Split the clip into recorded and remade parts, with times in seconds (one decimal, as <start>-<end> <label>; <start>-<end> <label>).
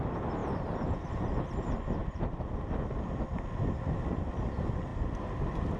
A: 0.0-5.8 recorded